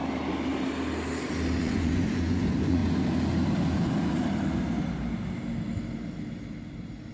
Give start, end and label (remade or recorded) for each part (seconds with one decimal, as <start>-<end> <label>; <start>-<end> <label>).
0.0-1.6 recorded; 1.6-2.8 remade; 2.8-7.1 recorded